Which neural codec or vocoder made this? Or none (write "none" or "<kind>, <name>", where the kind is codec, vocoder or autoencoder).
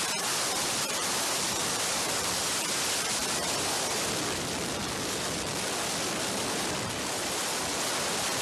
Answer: vocoder, BigVGAN v2